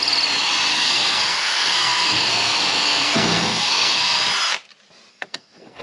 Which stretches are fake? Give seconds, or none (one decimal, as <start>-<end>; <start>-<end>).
0.7-4.2; 5.1-5.8